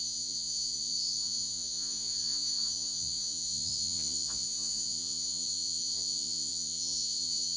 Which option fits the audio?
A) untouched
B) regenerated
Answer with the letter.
B